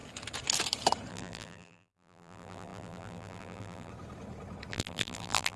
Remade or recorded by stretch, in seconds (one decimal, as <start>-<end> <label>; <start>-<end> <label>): 0.0-1.1 recorded; 1.1-3.9 remade; 3.9-4.7 recorded; 4.7-5.6 remade